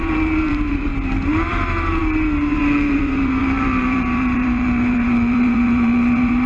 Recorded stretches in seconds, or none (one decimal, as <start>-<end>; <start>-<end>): 0.9-1.5